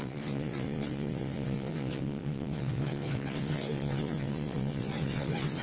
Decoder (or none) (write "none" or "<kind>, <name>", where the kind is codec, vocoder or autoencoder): vocoder, WaveNeXt